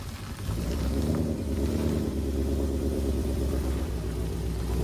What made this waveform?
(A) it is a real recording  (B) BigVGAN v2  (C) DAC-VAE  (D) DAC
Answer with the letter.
B